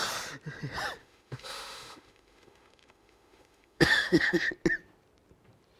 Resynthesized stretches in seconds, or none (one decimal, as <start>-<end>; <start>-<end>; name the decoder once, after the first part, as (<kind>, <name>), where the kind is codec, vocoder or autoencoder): 1.0-4.5 (autoencoder, DAC-VAE)